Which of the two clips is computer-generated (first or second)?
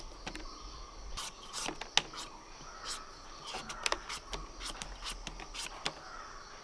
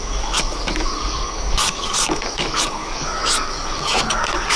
second